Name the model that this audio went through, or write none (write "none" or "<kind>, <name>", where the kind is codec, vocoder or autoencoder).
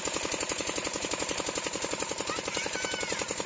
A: none